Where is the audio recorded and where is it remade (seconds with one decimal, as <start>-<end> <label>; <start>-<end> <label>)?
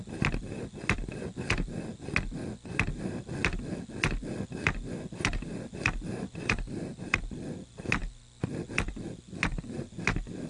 0.0-10.5 recorded